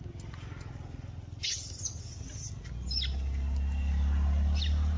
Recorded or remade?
recorded